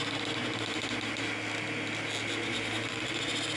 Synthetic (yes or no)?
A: no